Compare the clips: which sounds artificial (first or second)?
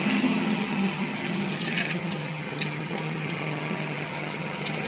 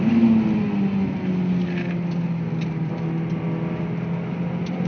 first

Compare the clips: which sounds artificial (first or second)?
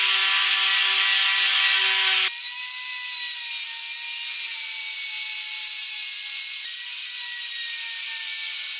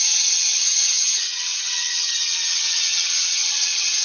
second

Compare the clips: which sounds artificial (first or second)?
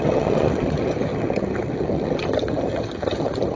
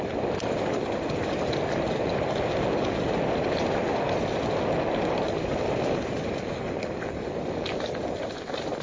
first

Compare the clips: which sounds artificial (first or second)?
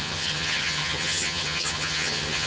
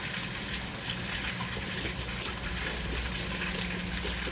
first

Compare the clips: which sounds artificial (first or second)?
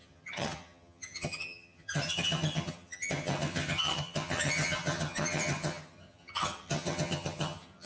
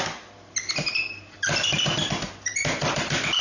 first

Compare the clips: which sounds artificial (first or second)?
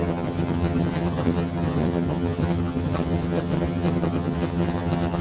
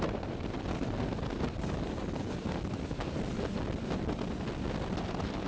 first